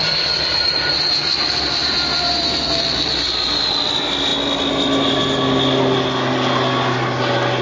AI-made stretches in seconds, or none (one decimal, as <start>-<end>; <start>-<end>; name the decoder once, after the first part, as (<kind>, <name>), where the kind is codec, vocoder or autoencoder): 0.0-1.3 (vocoder, BigVGAN v2); 1.8-3.8